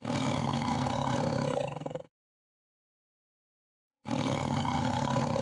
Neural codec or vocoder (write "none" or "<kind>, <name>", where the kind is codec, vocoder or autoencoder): codec, SNAC